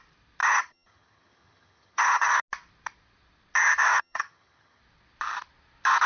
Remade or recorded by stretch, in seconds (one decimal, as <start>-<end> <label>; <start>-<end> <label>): 0.0-0.4 recorded; 0.4-2.4 remade; 2.4-3.9 recorded; 3.9-4.8 remade; 4.8-6.1 recorded